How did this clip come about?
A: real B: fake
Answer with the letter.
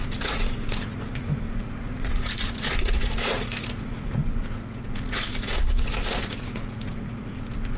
B